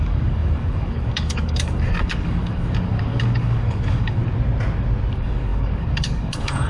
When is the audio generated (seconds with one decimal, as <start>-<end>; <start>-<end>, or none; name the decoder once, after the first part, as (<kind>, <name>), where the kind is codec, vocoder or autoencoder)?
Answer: 0.0-4.2 (codec, DAC); 5.1-6.7